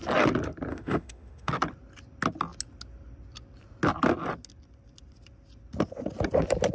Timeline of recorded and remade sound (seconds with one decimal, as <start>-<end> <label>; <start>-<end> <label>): 0.0-0.7 recorded; 0.7-1.5 remade; 1.5-6.7 recorded